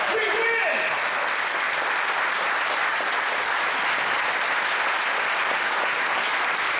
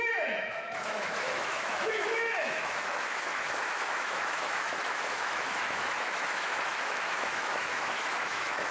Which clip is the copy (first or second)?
second